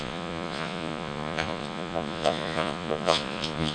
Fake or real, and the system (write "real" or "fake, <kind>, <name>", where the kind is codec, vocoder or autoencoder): fake, vocoder, Vocos